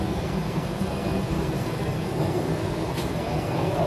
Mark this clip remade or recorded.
remade